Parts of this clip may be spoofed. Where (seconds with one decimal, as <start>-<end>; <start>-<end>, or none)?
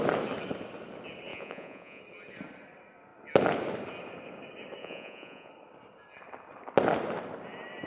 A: 1.3-2.0; 4.8-5.5